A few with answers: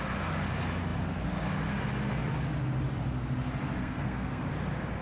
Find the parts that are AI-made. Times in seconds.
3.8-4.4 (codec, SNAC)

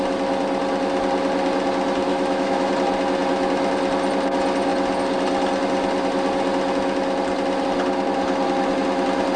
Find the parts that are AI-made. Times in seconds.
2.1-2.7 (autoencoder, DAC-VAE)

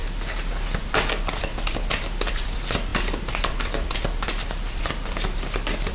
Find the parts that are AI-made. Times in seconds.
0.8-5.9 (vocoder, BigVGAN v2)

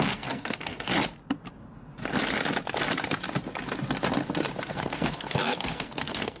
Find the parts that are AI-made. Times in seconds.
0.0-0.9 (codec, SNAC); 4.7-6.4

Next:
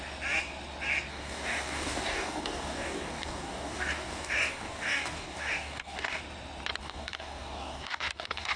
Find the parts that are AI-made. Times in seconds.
1.1-6.2 (codec, DAC); 6.8-8.6